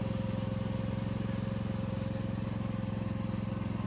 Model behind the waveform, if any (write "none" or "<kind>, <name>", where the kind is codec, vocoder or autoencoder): none